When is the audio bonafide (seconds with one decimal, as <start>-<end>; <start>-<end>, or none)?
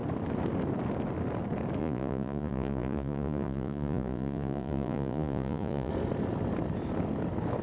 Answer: 0.0-1.8; 5.9-7.6